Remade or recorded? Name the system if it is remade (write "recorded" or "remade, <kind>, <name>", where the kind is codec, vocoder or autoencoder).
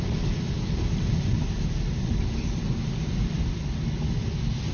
recorded